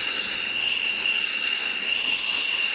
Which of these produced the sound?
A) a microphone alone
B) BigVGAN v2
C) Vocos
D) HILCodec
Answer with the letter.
B